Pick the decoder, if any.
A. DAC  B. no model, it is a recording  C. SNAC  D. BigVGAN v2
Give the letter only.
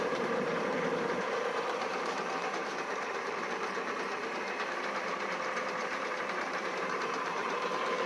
D